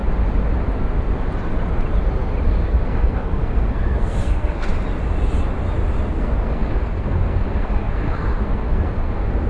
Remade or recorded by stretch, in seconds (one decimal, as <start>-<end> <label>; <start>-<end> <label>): 0.0-2.5 recorded; 2.5-4.7 remade; 4.7-6.1 recorded; 6.1-9.5 remade